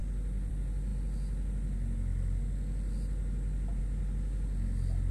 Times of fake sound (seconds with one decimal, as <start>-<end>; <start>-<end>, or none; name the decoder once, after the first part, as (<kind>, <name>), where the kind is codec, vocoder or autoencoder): none